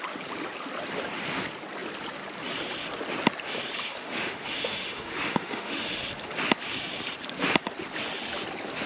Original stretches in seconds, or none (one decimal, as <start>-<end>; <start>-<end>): 0.0-3.9; 6.0-8.9